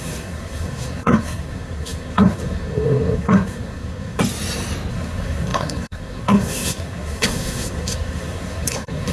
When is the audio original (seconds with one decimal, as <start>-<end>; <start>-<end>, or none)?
4.2-4.9